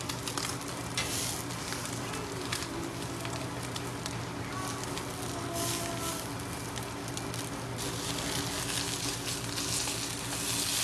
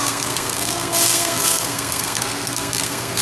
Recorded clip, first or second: first